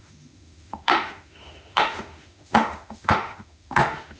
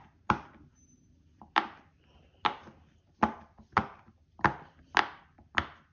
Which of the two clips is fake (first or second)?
first